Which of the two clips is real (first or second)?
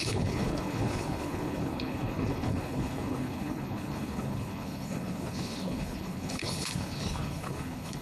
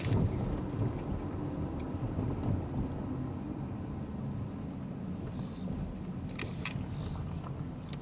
second